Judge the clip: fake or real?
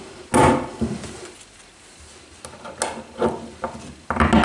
real